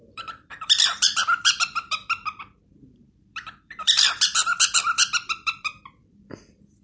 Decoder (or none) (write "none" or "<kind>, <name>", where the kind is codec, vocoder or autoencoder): vocoder, BigVGAN v2